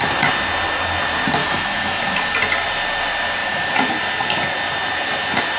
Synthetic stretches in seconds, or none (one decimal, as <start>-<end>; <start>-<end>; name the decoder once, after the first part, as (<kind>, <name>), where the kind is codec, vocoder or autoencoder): 1.4-2.0 (autoencoder, DAC-VAE)